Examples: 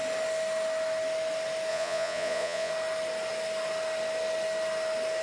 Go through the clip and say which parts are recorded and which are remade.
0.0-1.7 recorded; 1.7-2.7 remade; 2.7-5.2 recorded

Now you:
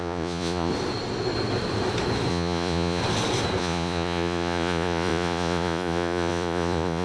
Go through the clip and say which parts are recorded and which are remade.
0.0-0.7 remade; 0.7-2.3 recorded; 2.3-3.0 remade; 3.0-3.6 recorded; 3.6-7.0 remade

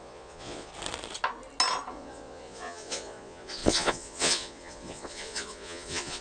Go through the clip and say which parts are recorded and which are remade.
0.0-0.7 remade; 0.7-1.9 recorded; 1.9-6.2 remade

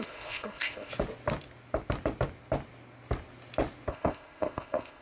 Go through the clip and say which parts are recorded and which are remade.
0.0-0.9 remade; 0.9-3.9 recorded; 3.9-5.0 remade

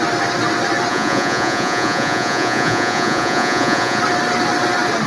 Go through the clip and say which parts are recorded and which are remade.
0.0-0.9 recorded; 0.9-4.0 remade; 4.0-5.1 recorded

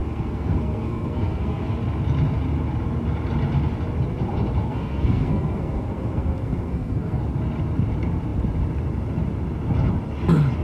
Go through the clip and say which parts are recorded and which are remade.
0.0-1.7 remade; 1.7-4.6 recorded; 4.6-7.2 remade; 7.2-10.6 recorded

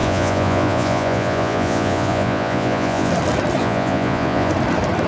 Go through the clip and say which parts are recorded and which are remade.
0.0-3.1 remade; 3.1-3.6 recorded; 3.6-4.5 remade; 4.5-5.1 recorded